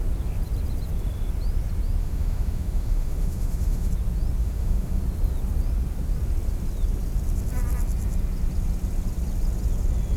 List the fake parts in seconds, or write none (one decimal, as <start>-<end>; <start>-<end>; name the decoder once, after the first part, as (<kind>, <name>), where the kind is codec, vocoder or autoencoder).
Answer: 2.0-3.9 (autoencoder, DAC-VAE); 4.4-5.0